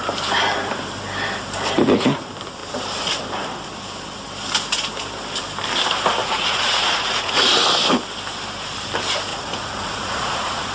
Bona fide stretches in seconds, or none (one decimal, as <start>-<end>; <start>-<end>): 0.0-6.2; 7.5-9.3